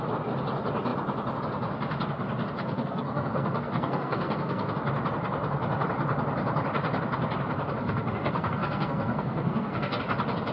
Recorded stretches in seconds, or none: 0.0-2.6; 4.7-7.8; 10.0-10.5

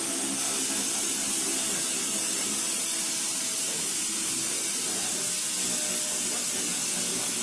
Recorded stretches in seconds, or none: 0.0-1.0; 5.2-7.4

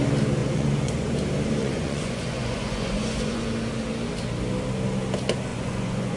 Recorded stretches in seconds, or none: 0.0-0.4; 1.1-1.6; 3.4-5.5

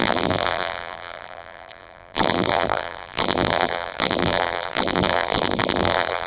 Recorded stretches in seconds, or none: none

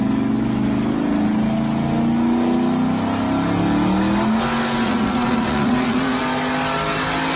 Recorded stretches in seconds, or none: 0.0-4.8; 6.2-7.4